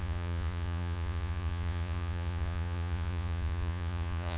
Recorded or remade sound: remade